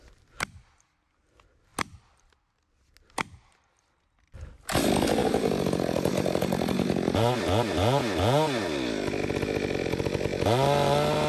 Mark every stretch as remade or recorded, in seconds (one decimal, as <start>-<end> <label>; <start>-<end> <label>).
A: 0.0-5.2 recorded; 5.2-7.4 remade; 7.4-11.3 recorded